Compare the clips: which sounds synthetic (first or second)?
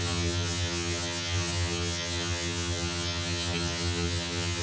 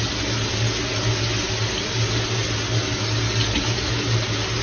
first